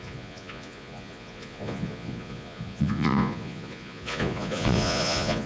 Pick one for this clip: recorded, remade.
remade